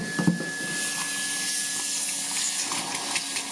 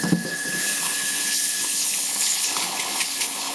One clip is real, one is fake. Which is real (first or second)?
first